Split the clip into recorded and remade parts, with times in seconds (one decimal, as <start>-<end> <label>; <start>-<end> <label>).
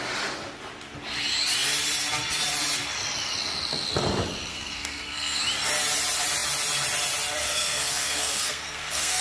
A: 0.0-4.5 recorded; 4.5-5.4 remade; 5.4-7.4 recorded; 7.4-9.2 remade